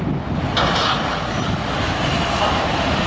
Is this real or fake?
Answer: real